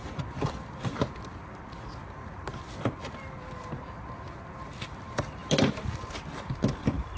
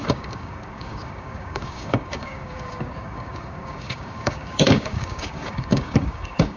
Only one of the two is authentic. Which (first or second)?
first